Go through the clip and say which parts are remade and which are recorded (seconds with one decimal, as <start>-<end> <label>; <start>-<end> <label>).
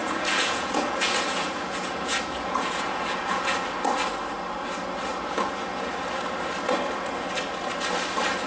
0.0-3.5 remade; 3.5-5.1 recorded; 5.1-5.9 remade; 5.9-8.5 recorded